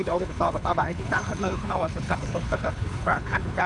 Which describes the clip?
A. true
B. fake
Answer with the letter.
B